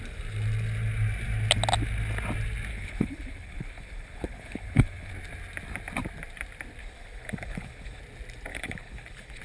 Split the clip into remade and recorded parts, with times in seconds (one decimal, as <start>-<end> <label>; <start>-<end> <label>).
0.0-2.7 recorded; 2.7-5.1 remade; 5.1-6.8 recorded; 6.8-8.0 remade; 8.0-8.5 recorded; 8.5-9.4 remade